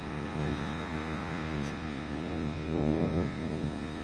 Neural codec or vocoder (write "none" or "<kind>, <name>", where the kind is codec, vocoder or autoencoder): vocoder, Vocos